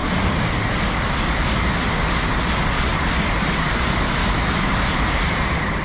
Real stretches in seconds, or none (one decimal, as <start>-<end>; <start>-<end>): 0.0-4.2; 4.7-5.8